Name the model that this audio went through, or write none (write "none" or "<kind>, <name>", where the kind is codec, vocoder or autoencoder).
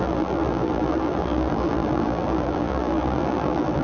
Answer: vocoder, BigVGAN v2